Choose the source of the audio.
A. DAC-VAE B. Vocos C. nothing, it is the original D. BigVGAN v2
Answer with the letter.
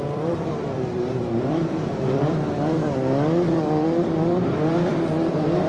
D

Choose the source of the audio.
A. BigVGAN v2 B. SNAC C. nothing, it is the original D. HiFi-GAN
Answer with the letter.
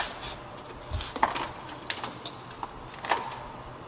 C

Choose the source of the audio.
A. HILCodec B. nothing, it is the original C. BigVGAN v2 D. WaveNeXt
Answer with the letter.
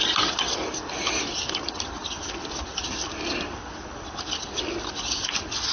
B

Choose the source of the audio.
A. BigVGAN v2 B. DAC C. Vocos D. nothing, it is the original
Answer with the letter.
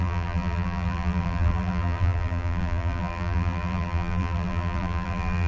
A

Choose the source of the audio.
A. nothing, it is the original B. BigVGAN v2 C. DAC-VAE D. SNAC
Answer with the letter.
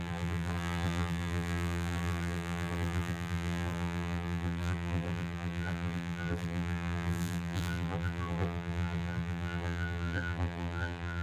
B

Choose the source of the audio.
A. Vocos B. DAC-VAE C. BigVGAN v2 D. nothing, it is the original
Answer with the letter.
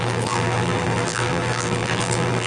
C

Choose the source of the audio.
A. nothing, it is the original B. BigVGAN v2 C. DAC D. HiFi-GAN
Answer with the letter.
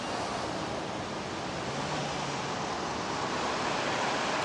A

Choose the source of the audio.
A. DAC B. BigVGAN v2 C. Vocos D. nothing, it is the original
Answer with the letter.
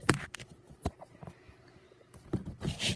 B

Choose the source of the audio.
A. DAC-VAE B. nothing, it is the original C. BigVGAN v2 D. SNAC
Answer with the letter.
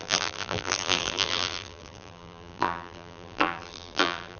C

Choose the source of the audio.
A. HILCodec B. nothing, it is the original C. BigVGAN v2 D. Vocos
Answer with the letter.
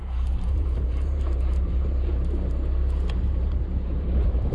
C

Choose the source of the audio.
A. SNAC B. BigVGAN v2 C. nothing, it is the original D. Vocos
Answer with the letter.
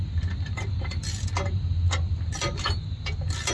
C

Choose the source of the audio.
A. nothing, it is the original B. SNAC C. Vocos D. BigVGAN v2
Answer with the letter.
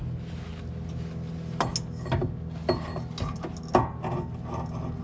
A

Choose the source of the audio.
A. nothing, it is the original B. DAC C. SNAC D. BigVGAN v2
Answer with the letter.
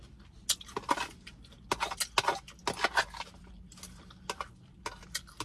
A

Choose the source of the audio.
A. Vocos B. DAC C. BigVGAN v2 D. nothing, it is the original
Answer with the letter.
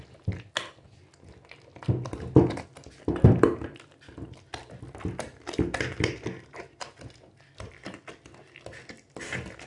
D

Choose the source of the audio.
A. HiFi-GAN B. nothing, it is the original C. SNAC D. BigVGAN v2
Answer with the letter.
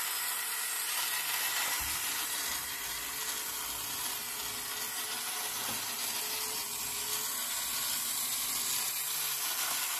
B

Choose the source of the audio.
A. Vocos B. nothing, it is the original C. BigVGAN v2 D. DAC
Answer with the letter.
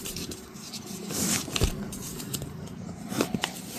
C